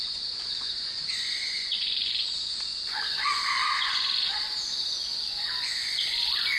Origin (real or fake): fake